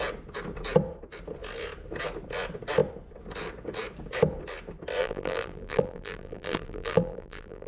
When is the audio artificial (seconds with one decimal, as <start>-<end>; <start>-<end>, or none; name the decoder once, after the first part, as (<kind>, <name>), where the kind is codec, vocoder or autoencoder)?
5.0-7.7 (vocoder, BigVGAN v2)